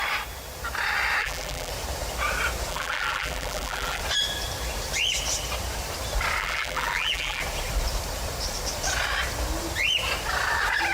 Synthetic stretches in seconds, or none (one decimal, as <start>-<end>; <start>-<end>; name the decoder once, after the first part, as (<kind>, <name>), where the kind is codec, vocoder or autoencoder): 1.2-1.7 (vocoder, BigVGAN v2); 2.7-4.0; 6.4-7.4

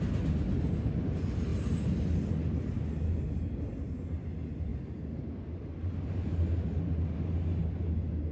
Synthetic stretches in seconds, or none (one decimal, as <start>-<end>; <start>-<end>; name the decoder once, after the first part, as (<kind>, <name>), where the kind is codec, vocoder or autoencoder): none

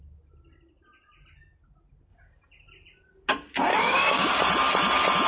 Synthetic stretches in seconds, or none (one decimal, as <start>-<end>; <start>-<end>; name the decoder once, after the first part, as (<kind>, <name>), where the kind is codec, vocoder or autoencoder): 3.7-4.4 (codec, DAC)

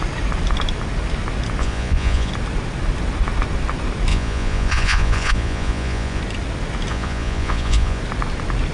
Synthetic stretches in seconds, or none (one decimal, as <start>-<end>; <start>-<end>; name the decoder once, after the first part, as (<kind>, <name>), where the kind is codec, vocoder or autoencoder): 1.6-2.3 (vocoder, Vocos); 4.1-6.2; 6.9-8.0

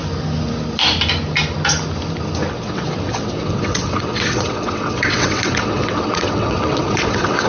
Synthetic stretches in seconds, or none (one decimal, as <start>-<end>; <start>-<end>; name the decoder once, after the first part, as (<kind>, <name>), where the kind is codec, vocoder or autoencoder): 2.5-7.5 (vocoder, WaveNeXt)

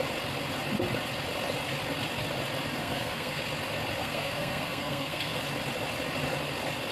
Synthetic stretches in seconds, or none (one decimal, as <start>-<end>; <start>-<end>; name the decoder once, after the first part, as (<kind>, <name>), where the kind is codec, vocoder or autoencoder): 2.8-3.4 (codec, SNAC); 4.0-5.4

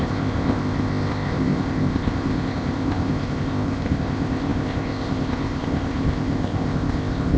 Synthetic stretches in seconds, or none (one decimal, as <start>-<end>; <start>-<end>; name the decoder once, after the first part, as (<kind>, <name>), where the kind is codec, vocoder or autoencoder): 0.0-7.4 (codec, ZipCodec)

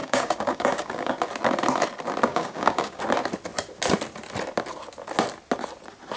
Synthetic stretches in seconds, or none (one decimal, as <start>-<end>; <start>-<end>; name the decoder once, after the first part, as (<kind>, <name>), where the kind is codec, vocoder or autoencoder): 0.0-1.1 (codec, DAC); 2.3-3.0